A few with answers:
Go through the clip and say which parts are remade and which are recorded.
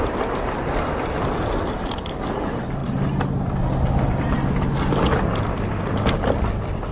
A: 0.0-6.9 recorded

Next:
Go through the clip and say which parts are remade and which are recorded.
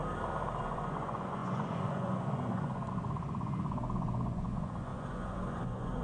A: 0.0-0.6 recorded; 0.6-6.0 remade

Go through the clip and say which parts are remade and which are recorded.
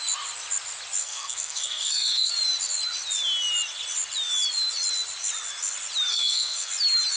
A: 0.0-1.0 recorded; 1.0-2.3 remade; 2.3-6.1 recorded; 6.1-6.7 remade; 6.7-7.2 recorded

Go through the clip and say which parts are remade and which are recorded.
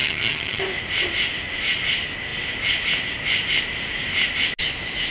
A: 0.0-0.6 remade; 0.6-5.1 recorded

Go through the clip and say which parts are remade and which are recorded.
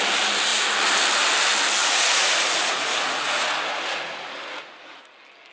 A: 0.0-1.8 recorded; 1.8-5.1 remade; 5.1-5.5 recorded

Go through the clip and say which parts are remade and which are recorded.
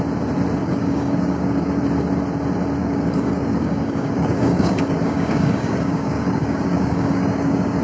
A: 0.0-0.6 recorded; 0.6-1.8 remade; 1.8-2.8 recorded; 2.8-7.8 remade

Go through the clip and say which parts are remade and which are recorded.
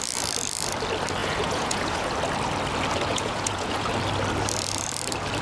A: 0.0-1.2 recorded; 1.2-2.1 remade; 2.1-3.1 recorded; 3.1-3.9 remade; 3.9-5.4 recorded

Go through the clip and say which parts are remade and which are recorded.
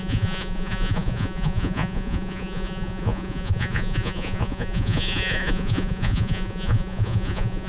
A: 0.0-7.7 remade